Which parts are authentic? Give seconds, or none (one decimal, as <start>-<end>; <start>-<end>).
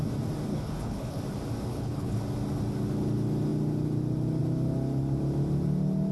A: 0.0-0.5; 1.2-1.7; 2.2-6.1